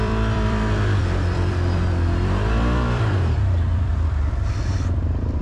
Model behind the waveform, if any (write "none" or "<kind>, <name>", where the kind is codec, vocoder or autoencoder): vocoder, BigVGAN v2